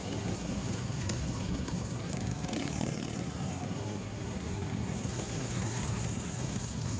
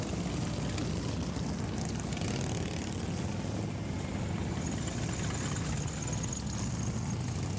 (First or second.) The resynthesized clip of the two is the first